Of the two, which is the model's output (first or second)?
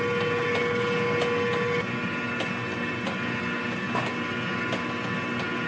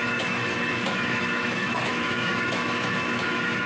second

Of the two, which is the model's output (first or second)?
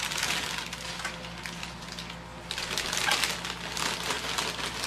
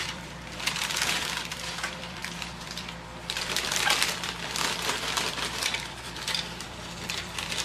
second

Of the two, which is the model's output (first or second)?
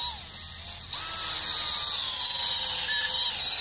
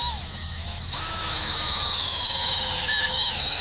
second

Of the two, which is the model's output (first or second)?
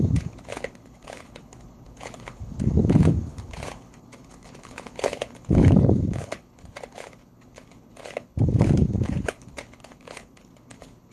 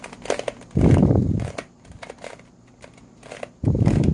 first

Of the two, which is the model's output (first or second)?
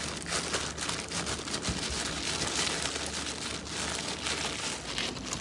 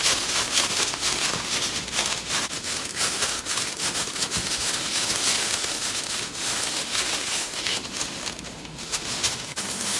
second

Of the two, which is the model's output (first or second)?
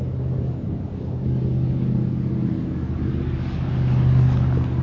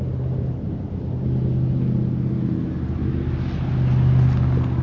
first